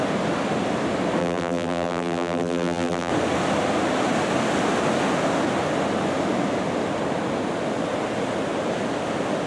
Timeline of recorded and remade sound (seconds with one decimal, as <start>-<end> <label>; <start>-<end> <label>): 0.0-1.2 recorded; 1.2-3.1 remade; 3.1-9.5 recorded